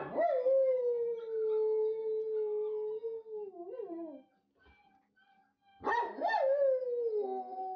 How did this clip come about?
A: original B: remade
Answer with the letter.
A